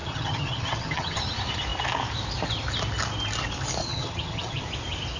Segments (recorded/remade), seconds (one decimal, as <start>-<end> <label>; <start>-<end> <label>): 0.0-1.2 remade; 1.2-3.8 recorded; 3.8-4.6 remade; 4.6-5.2 recorded